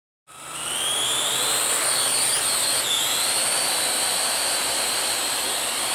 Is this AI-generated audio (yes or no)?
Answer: no